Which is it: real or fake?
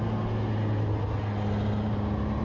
real